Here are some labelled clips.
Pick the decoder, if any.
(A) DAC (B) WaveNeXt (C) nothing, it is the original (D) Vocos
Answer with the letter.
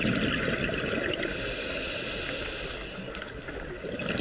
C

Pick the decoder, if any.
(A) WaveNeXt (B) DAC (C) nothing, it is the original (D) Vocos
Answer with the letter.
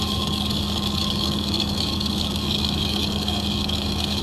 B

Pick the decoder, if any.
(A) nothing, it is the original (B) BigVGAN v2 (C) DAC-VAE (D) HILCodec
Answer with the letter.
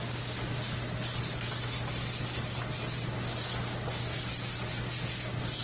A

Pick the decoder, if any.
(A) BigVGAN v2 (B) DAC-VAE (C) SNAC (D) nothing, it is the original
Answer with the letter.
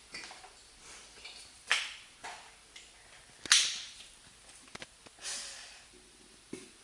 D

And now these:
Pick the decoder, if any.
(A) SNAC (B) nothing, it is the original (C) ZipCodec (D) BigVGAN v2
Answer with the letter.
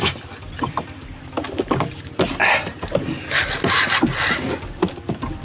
B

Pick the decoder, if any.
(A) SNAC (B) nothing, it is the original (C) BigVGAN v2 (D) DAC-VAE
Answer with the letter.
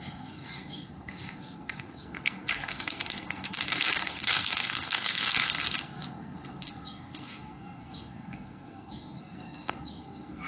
A